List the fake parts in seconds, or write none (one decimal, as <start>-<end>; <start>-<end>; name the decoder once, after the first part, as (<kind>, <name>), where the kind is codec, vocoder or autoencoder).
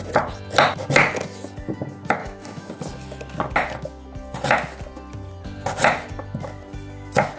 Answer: 2.2-2.7 (autoencoder, DAC-VAE)